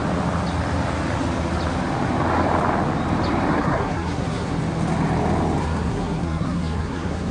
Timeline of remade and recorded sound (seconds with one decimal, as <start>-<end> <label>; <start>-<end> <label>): 0.0-3.5 recorded; 3.5-4.5 remade; 4.5-5.6 recorded; 5.6-7.3 remade